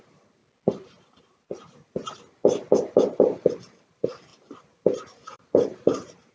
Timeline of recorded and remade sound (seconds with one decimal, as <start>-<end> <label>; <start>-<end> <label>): 0.0-0.4 remade; 0.4-1.2 recorded; 1.2-2.0 remade; 2.0-2.9 recorded; 2.9-6.3 remade